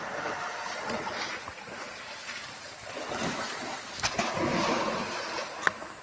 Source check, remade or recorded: recorded